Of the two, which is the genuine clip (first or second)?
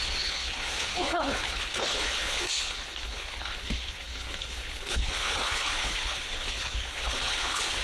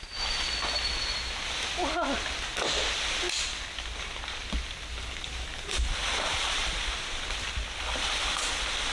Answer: second